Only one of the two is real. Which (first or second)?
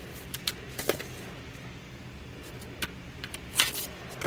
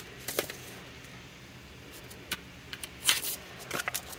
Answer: first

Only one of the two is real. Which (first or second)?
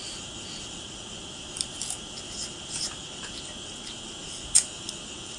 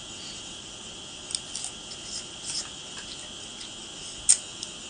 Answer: second